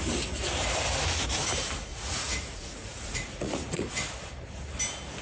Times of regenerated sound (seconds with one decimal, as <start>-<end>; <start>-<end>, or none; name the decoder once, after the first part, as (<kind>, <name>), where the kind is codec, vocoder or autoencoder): 1.9-3.9 (vocoder, Vocos)